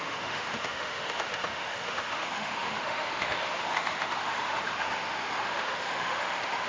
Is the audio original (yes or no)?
no